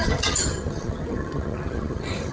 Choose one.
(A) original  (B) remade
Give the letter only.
B